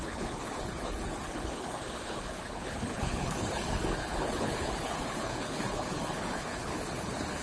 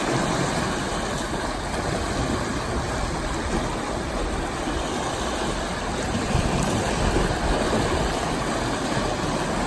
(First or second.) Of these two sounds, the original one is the second